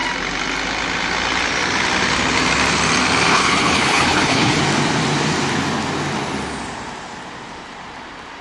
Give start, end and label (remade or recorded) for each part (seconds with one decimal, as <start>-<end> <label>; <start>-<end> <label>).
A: 0.0-3.3 recorded; 3.3-4.6 remade; 4.6-8.4 recorded